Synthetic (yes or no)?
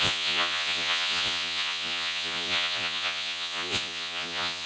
yes